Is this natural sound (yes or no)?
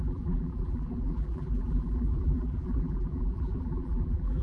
no